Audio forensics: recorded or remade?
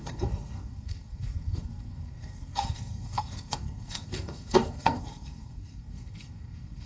remade